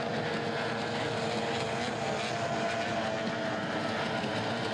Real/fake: real